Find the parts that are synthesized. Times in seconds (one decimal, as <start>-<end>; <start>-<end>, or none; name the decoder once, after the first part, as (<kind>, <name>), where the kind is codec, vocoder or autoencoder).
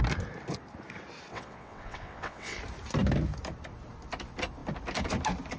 1.3-2.6 (vocoder, WaveNeXt)